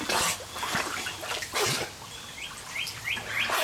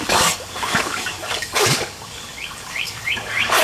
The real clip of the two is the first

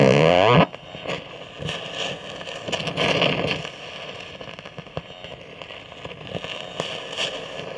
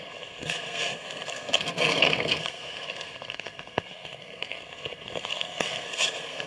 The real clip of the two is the first